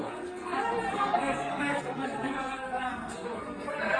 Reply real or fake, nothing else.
fake